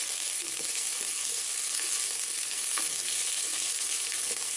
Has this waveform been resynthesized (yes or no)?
yes